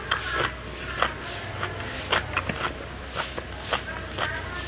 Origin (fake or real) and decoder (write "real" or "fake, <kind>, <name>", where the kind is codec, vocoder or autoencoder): real